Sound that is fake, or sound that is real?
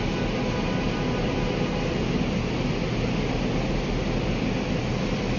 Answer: real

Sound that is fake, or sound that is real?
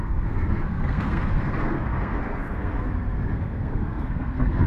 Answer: fake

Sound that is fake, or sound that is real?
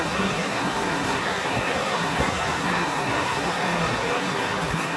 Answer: fake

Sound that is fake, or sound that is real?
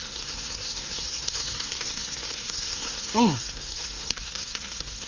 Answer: fake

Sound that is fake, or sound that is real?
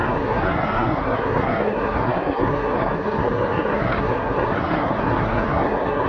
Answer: fake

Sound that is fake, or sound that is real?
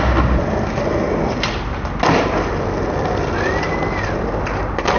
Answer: real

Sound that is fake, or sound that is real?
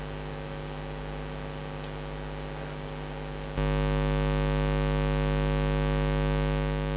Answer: real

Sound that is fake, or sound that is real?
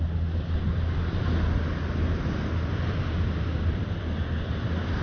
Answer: real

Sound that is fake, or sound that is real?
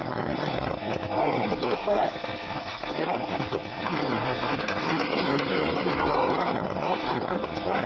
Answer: fake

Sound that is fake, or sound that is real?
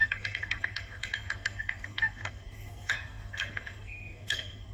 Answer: fake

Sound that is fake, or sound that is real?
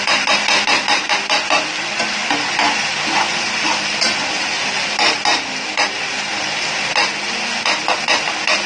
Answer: real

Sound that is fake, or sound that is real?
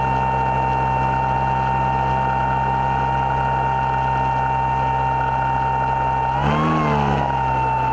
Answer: real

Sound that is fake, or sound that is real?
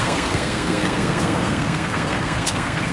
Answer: fake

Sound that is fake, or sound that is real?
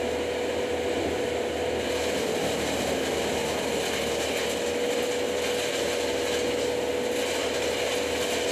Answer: real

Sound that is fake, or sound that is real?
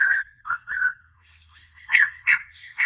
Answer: fake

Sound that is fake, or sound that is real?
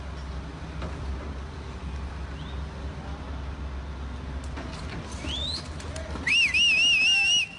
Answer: real